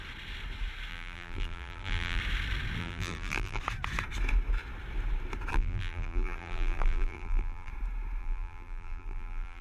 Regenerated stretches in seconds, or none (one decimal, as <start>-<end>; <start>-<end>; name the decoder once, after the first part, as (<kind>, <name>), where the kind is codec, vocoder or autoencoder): 0.9-2.2 (vocoder, BigVGAN v2); 2.8-3.6; 5.5-7.7; 8.2-9.6